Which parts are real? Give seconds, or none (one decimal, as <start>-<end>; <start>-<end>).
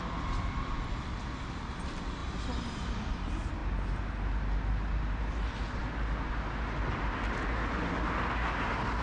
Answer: 0.0-9.0